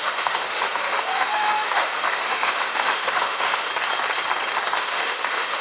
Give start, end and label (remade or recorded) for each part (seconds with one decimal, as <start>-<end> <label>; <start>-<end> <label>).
0.0-3.7 remade; 3.7-4.8 recorded; 4.8-5.6 remade

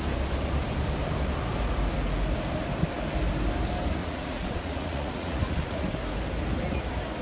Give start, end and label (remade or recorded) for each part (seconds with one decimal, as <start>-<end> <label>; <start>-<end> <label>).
0.0-4.0 recorded; 4.0-5.9 remade; 5.9-7.2 recorded